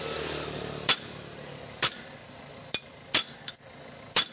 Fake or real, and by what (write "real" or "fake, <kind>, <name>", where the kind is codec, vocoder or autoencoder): real